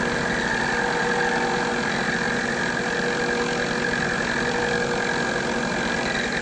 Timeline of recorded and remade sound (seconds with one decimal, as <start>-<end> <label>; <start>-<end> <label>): 0.0-6.4 recorded